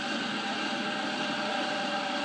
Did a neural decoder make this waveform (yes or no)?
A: no